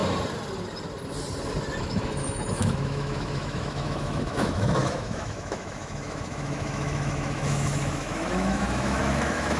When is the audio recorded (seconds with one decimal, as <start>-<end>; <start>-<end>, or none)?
0.0-1.8